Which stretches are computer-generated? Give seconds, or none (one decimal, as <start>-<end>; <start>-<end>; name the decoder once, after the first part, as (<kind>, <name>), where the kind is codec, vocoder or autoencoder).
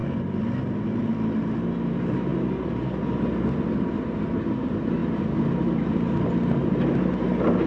none